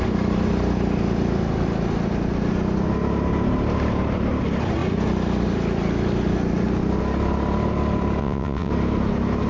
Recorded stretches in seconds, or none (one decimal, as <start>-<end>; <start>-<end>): 0.0-8.2; 8.7-9.5